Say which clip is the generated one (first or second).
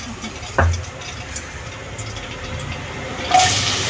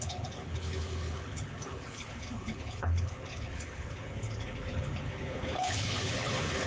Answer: second